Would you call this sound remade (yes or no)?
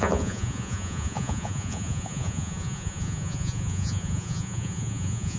yes